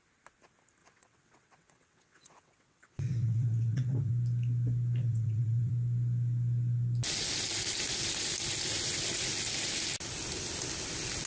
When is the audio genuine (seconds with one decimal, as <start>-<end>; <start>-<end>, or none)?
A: 0.0-0.8; 4.1-5.0; 5.7-11.3